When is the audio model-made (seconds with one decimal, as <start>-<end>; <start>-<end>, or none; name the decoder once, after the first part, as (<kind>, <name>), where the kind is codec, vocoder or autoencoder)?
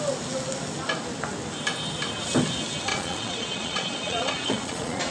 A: 2.9-5.1 (vocoder, Vocos)